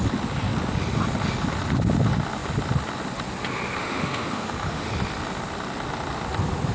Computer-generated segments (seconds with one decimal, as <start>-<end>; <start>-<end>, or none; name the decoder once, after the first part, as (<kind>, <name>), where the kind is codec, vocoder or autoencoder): 3.8-4.9 (autoencoder, DAC-VAE)